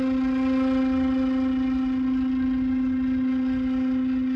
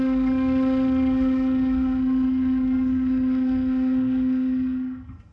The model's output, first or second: second